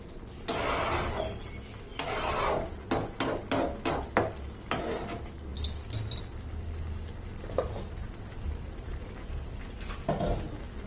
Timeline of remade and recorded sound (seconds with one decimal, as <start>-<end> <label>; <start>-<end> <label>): 0.0-8.0 recorded; 8.0-9.0 remade; 9.0-10.9 recorded